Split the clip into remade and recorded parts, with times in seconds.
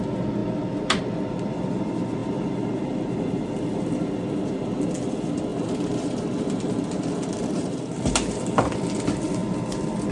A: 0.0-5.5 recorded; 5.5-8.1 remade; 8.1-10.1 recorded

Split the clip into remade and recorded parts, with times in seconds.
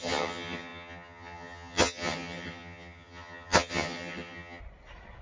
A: 0.0-4.6 remade; 4.6-5.2 recorded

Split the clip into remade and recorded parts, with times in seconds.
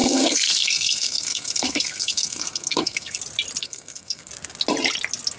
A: 0.0-3.2 remade; 3.2-3.6 recorded; 3.6-4.3 remade; 4.3-5.4 recorded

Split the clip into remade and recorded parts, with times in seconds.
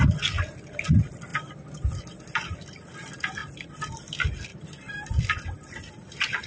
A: 0.0-6.5 recorded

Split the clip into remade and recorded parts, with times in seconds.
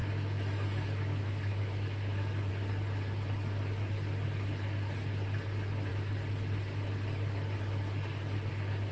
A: 0.0-2.5 remade; 2.5-8.9 recorded